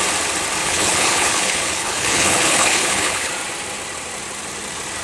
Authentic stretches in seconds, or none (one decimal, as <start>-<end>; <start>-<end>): 0.0-0.6; 3.3-5.0